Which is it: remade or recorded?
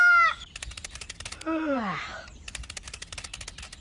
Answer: recorded